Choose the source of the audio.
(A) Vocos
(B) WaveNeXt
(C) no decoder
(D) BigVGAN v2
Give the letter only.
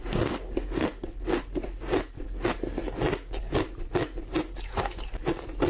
C